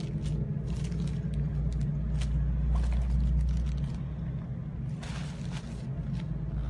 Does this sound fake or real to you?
real